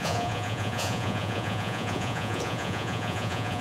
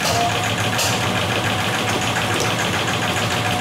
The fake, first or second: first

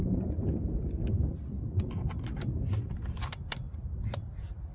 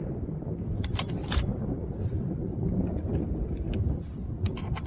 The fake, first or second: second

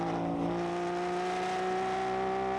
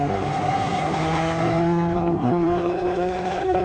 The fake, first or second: second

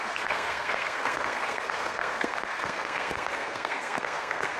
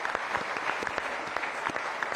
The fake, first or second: first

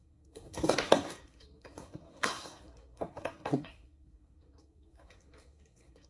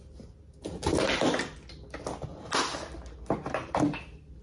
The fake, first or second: first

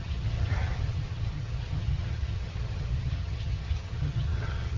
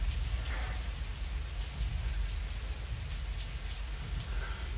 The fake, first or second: first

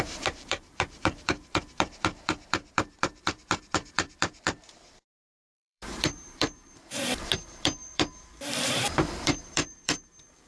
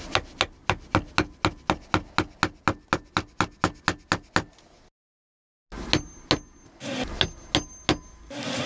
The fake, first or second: first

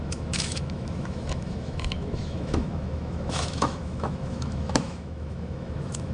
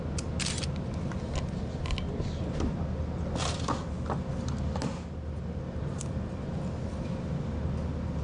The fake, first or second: first